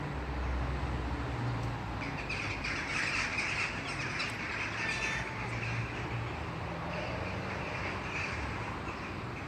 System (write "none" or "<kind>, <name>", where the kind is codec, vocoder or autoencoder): none